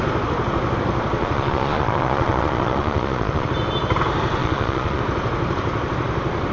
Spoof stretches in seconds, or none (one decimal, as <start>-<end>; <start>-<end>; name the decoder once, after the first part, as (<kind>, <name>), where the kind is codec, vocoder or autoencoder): 1.2-3.5 (vocoder, Vocos); 4.4-5.0